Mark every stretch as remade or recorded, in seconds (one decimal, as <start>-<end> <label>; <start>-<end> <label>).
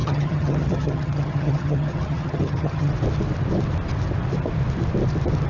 0.0-2.9 remade; 2.9-5.5 recorded